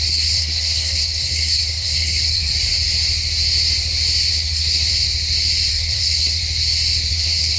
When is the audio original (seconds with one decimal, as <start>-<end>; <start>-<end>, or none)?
2.5-4.3; 4.9-5.7; 6.4-7.1